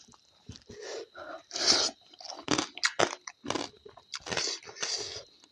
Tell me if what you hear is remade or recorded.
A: recorded